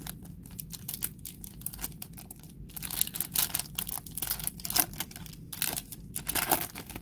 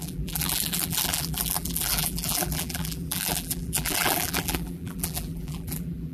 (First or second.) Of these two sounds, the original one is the first